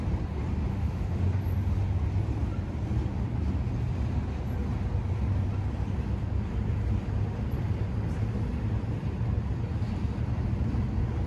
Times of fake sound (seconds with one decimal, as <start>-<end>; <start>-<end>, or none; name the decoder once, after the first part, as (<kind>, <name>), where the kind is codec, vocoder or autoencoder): 0.7-1.2 (autoencoder, DAC-VAE)